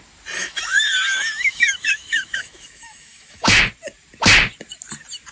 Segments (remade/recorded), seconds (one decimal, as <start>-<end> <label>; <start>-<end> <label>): 0.0-0.4 recorded; 0.4-3.6 remade; 3.6-5.3 recorded